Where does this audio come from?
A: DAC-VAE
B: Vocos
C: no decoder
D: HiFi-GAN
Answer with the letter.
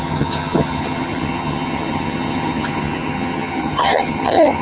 D